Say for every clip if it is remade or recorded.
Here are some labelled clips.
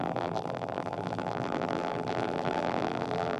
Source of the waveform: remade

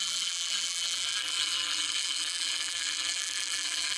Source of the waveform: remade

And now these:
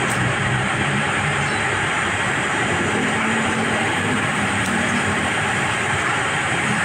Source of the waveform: remade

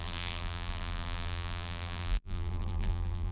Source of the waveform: remade